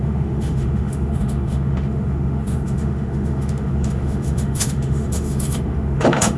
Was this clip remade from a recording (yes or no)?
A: yes